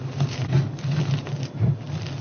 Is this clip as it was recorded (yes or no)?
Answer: yes